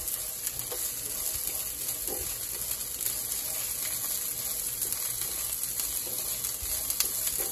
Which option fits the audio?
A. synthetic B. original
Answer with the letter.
B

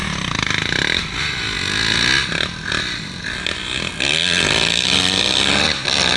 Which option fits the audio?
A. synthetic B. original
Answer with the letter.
B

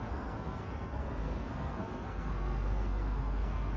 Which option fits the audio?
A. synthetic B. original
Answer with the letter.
A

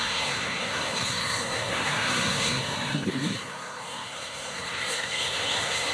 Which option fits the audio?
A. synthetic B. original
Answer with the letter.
A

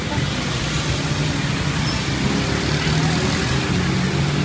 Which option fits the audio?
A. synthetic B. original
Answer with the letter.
B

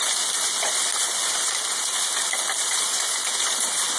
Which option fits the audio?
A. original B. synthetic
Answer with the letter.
A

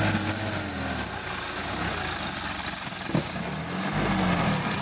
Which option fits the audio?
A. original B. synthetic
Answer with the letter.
A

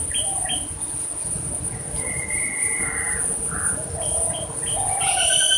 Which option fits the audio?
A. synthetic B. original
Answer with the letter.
B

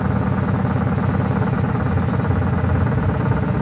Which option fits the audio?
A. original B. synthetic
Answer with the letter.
A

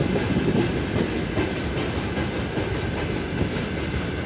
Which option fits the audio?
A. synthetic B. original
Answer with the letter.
B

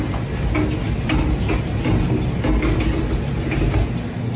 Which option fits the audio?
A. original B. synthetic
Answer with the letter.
A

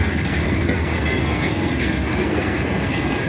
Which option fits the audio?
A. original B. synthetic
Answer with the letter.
B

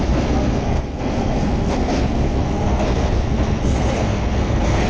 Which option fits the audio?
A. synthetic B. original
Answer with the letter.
A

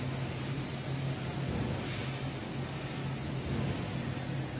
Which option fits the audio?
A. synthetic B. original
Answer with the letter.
B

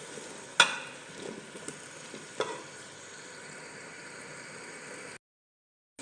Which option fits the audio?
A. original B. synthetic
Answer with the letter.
A